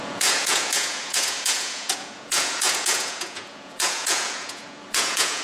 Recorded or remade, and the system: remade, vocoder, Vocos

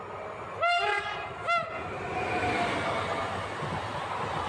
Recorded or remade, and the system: recorded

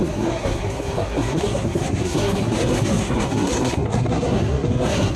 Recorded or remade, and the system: remade, codec, SNAC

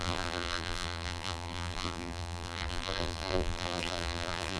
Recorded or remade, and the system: remade, vocoder, BigVGAN v2